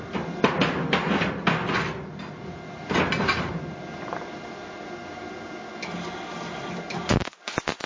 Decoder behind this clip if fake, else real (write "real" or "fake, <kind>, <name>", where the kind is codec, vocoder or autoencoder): real